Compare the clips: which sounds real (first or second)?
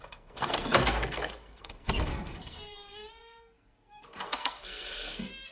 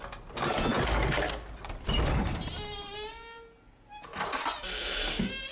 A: second